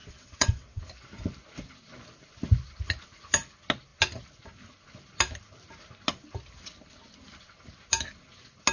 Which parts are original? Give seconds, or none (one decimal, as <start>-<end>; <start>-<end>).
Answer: 0.8-8.7